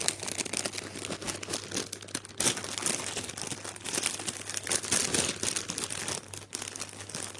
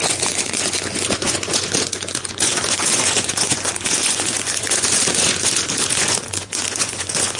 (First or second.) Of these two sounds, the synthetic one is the second